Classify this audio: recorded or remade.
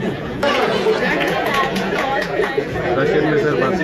remade